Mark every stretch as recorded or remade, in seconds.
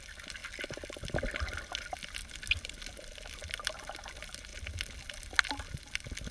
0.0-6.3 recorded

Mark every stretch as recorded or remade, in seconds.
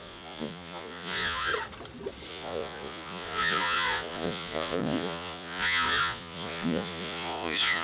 0.0-1.5 remade; 1.5-2.3 recorded; 2.3-7.8 remade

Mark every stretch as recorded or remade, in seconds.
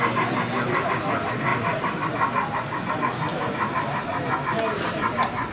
0.0-5.5 recorded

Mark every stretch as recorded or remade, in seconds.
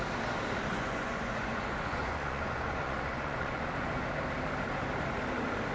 0.0-0.7 recorded; 0.7-4.1 remade; 4.1-5.7 recorded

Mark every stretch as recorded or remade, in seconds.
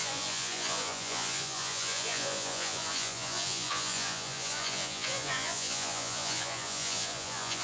0.0-7.6 remade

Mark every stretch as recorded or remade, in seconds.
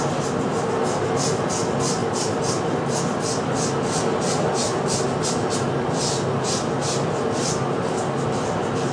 0.0-8.9 recorded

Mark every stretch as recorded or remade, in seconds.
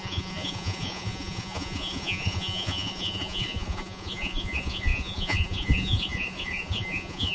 0.0-7.3 remade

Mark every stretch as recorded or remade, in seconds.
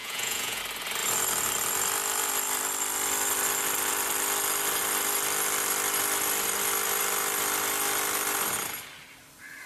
0.0-0.6 remade; 0.6-9.7 recorded